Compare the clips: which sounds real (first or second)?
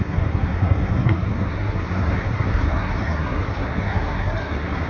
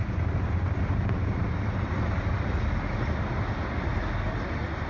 second